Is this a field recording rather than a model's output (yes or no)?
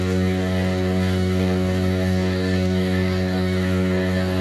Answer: no